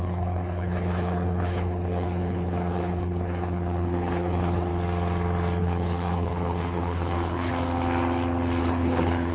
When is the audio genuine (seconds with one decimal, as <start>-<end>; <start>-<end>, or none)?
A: 4.7-5.6; 7.5-8.6